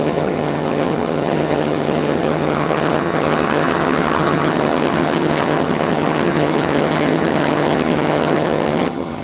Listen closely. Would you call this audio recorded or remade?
remade